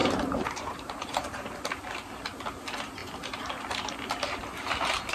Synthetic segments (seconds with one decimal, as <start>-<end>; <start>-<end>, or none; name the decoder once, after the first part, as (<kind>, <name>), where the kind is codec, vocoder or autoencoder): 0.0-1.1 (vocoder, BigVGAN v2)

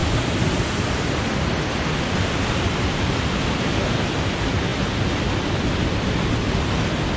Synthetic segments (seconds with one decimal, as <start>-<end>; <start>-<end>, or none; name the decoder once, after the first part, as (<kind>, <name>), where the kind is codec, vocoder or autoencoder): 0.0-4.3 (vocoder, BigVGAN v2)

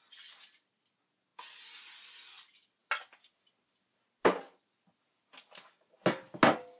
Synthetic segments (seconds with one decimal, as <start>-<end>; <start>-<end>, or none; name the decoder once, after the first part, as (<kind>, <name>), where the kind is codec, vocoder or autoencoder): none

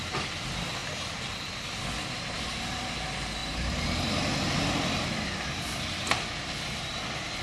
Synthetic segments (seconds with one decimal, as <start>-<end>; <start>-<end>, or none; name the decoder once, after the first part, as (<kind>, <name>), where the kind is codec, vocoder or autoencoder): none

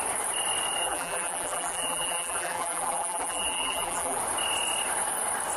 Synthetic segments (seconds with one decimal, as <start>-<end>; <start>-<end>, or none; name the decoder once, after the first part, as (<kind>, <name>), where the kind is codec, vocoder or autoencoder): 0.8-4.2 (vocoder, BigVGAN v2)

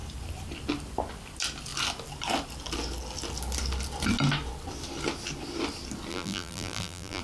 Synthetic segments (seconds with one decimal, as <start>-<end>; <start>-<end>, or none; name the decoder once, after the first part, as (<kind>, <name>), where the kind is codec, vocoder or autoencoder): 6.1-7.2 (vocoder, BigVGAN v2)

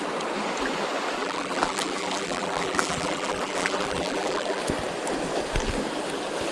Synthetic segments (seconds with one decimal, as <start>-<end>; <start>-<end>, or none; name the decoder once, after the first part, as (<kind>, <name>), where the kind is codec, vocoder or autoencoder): 1.2-4.6 (vocoder, BigVGAN v2)